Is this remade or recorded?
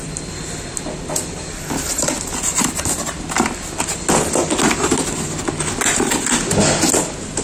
recorded